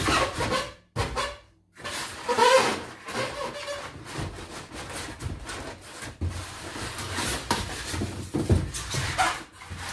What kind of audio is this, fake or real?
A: real